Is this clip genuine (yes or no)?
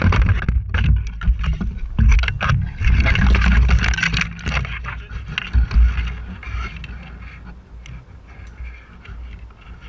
yes